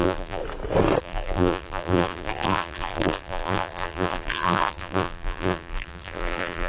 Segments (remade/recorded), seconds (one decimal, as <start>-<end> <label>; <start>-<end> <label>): 0.0-0.4 remade; 0.4-1.0 recorded; 1.0-6.7 remade